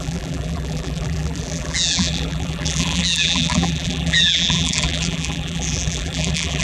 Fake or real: fake